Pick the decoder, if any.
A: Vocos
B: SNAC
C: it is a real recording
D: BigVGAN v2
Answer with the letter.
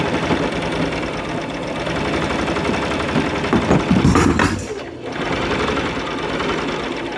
C